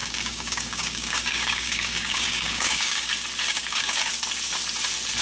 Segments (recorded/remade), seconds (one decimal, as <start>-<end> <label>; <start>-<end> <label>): 0.0-3.1 remade; 3.1-3.5 recorded; 3.5-4.1 remade; 4.1-5.2 recorded